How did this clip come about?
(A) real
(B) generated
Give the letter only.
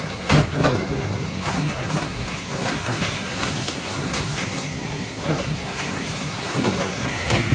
B